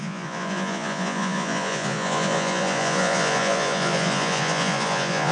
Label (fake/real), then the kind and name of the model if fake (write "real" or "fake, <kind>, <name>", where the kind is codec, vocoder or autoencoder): fake, vocoder, Vocos